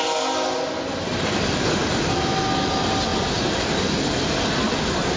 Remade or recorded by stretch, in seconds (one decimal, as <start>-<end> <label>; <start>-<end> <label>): 0.0-5.2 recorded